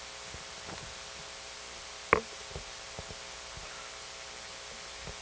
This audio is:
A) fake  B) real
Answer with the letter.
B